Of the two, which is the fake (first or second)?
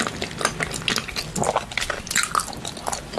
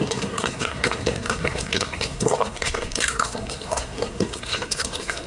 second